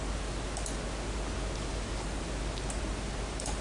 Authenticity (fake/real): real